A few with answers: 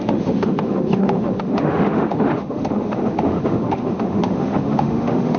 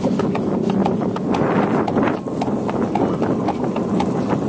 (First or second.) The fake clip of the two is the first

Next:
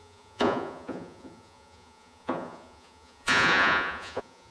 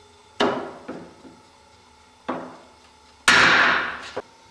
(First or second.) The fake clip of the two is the first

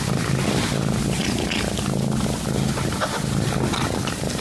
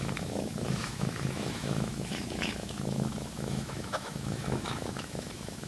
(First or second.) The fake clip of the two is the second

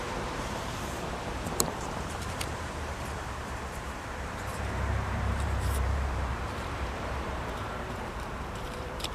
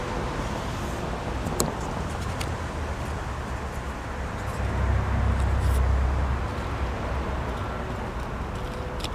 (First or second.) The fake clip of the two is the first